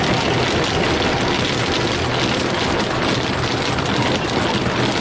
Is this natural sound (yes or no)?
yes